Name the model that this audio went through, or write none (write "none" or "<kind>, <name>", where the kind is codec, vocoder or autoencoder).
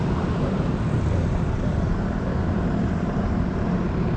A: vocoder, BigVGAN v2